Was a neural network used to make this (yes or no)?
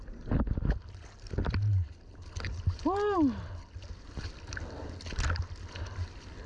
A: no